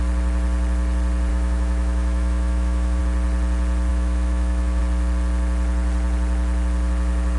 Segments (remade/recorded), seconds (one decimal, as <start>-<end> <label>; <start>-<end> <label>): 0.0-1.3 recorded; 1.3-3.0 remade; 3.0-3.9 recorded; 3.9-4.8 remade; 4.8-7.4 recorded